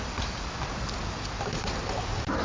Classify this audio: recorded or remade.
recorded